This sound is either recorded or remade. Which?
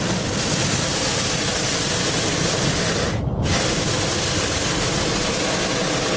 recorded